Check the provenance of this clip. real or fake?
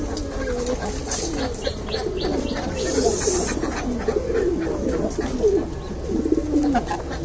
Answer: real